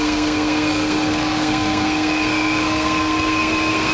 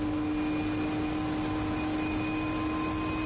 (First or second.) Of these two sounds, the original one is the second